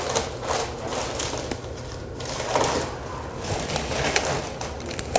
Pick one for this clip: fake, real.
real